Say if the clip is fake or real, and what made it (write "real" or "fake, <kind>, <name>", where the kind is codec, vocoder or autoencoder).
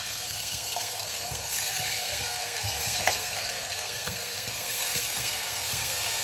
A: fake, codec, SNAC